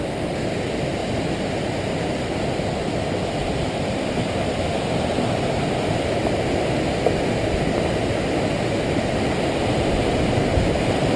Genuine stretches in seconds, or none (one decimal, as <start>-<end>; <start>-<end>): 0.0-11.2